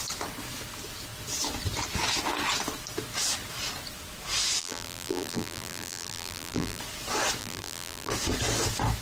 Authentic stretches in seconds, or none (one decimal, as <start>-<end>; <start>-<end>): 0.0-4.6; 6.8-7.4; 8.1-9.0